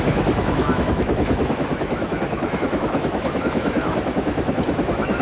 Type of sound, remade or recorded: remade